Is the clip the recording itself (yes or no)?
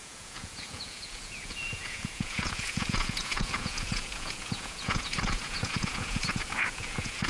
no